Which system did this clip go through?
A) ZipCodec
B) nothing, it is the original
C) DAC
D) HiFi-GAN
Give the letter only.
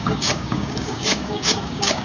C